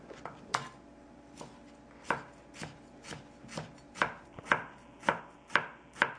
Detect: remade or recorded recorded